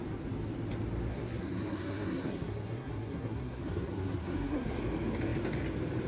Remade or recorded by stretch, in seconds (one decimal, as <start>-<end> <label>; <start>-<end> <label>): 0.0-1.1 recorded; 1.1-4.8 remade; 4.8-6.1 recorded